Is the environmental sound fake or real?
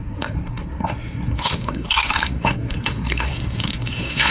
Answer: fake